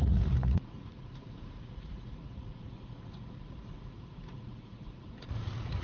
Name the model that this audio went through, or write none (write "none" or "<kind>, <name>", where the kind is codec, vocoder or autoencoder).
vocoder, Vocos